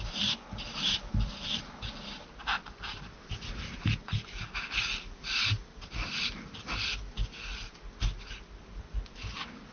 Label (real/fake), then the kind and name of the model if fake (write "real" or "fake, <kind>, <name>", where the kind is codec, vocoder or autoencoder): real